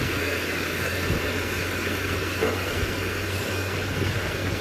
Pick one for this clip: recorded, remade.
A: remade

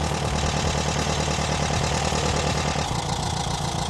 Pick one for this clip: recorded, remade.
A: recorded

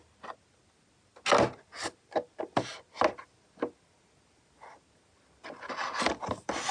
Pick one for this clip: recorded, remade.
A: recorded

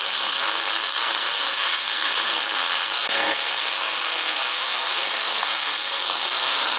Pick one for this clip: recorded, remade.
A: remade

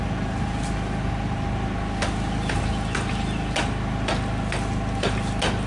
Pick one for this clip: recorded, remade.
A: recorded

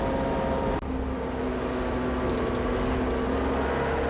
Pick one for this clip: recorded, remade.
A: recorded